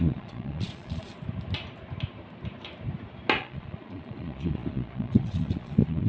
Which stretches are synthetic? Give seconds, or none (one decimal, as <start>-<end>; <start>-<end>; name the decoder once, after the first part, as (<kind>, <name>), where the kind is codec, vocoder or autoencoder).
0.0-1.1 (vocoder, Vocos); 3.4-6.1